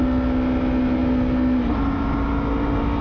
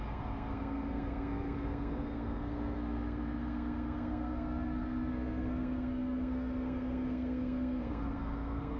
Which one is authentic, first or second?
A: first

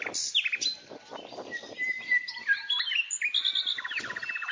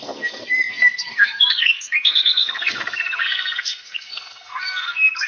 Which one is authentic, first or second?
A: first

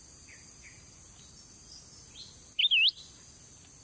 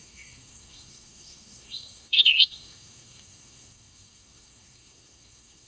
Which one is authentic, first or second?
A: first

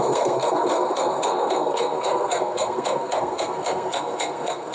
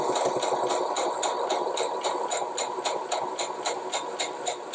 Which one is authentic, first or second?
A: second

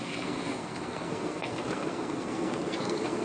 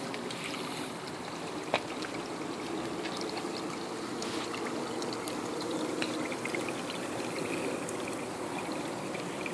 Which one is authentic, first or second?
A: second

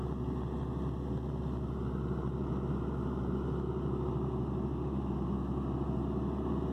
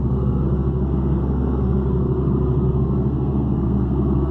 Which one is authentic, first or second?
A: first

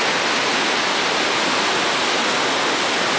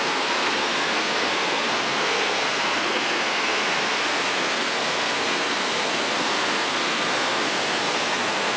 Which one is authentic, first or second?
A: first